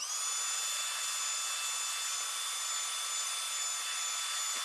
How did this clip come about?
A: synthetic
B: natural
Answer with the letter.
B